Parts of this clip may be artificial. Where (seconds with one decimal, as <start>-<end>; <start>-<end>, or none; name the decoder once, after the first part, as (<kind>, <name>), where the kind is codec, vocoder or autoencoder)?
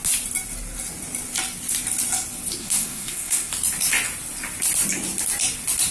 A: 2.6-3.5 (codec, SNAC)